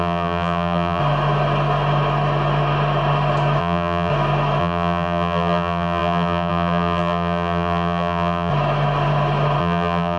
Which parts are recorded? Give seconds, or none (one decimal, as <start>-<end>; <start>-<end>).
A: 1.0-3.6; 4.1-4.6; 8.5-9.6